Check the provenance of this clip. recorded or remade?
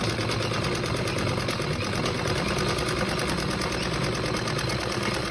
recorded